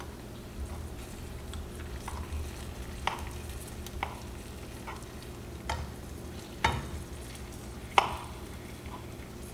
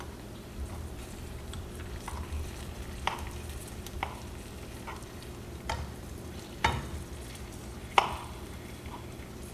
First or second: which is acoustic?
first